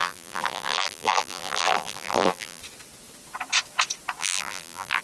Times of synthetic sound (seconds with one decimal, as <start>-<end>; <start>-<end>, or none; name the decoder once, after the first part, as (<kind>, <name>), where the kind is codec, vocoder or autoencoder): 0.0-2.6 (vocoder, BigVGAN v2); 4.2-5.0